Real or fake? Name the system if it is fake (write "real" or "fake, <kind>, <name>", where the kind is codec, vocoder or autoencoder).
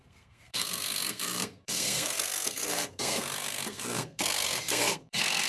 fake, codec, SNAC